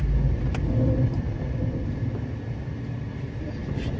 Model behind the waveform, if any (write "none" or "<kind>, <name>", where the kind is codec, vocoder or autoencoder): none